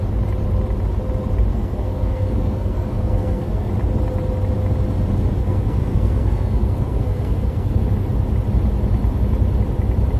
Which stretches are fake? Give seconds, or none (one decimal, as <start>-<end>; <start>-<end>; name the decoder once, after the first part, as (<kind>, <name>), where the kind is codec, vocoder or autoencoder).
1.5-3.7 (codec, SNAC); 5.4-7.8